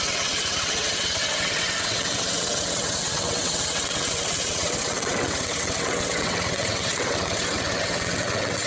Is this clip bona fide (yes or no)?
no